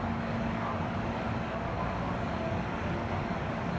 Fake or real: fake